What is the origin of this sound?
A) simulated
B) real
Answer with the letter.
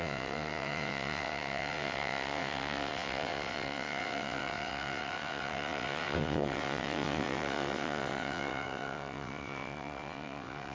A